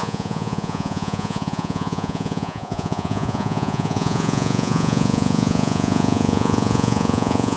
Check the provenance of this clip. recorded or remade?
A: remade